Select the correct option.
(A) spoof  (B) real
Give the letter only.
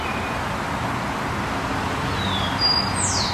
B